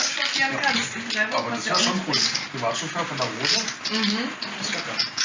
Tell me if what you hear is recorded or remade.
recorded